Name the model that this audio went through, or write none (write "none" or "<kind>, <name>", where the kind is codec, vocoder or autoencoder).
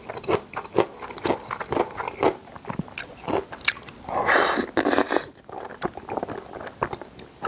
none